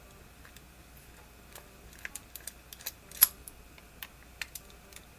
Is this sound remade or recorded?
recorded